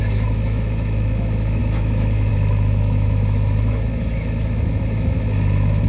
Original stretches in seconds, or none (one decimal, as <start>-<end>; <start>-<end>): none